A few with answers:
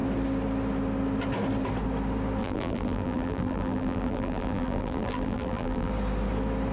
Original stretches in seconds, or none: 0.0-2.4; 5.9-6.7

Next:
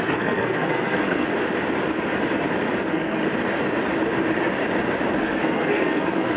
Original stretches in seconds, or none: 1.3-2.8; 3.2-5.1